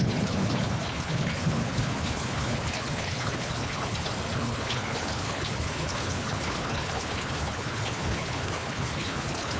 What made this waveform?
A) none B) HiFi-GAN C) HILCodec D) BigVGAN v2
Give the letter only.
C